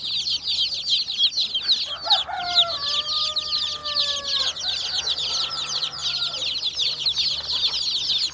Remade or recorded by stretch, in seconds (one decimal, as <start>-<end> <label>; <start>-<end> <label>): 0.0-8.3 recorded